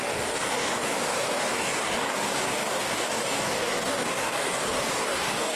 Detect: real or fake fake